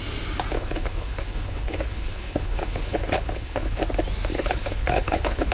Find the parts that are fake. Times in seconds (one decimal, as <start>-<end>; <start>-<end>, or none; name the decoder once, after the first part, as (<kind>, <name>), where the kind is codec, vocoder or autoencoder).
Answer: 0.5-3.8 (codec, HILCodec); 4.3-5.5